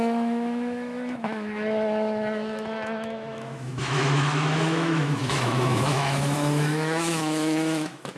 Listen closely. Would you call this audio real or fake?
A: fake